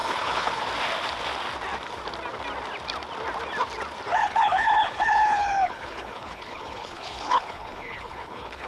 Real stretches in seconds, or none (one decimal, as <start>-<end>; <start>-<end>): 0.6-4.1